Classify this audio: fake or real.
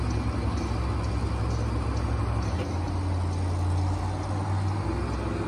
real